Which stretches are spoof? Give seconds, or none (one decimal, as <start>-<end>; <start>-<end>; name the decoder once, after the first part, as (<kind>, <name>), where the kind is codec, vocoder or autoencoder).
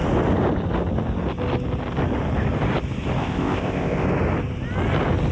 3.2-4.1 (codec, ZipCodec)